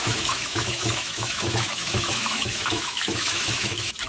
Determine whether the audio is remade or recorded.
remade